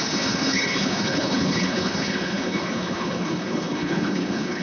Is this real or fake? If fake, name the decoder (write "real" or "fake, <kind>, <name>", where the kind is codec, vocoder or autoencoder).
fake, codec, HILCodec